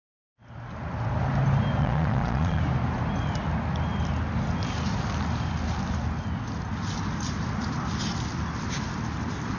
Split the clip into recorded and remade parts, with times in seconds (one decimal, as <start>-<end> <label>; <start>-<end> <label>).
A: 0.0-1.8 recorded; 1.8-2.6 remade; 2.6-9.6 recorded